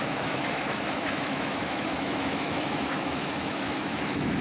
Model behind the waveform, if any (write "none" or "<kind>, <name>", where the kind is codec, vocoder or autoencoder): autoencoder, DAC-VAE